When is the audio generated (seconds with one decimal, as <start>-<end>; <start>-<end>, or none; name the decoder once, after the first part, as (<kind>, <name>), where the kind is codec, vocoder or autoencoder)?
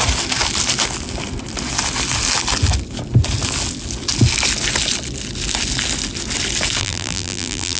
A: 6.8-7.8 (vocoder, BigVGAN v2)